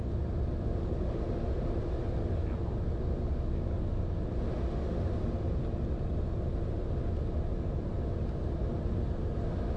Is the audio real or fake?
real